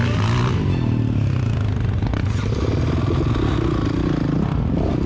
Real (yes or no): yes